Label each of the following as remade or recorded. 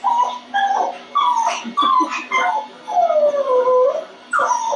recorded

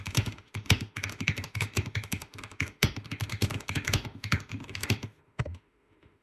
remade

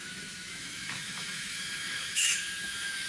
remade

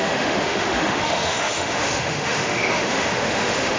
remade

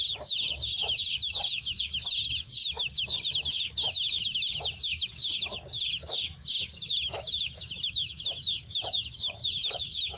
remade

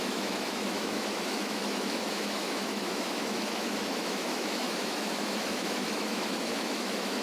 remade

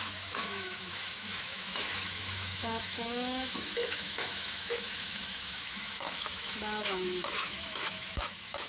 remade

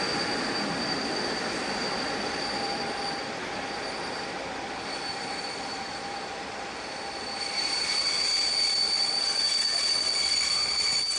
recorded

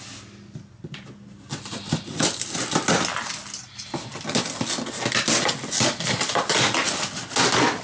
recorded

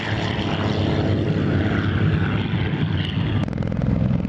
recorded